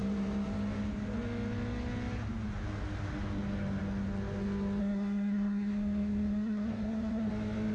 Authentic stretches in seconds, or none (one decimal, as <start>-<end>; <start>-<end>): 0.0-4.8; 7.3-7.7